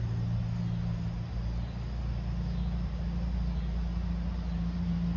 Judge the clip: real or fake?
real